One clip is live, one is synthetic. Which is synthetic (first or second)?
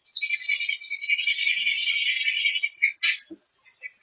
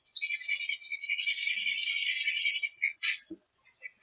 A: second